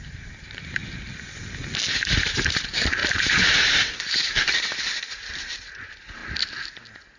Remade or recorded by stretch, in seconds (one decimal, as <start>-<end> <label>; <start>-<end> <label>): 0.0-0.8 remade; 0.8-1.9 recorded; 1.9-6.2 remade; 6.2-7.2 recorded